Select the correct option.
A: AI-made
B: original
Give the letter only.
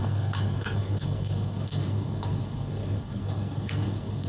A